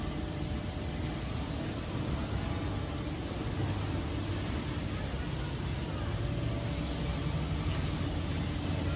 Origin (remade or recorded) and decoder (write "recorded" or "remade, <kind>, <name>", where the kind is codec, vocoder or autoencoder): recorded